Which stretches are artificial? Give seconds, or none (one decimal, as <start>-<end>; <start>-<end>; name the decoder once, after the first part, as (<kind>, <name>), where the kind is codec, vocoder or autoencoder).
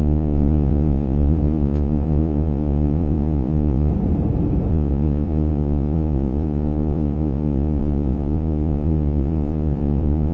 0.0-3.9 (vocoder, Vocos); 4.7-10.3